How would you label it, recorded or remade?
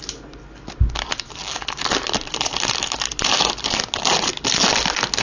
recorded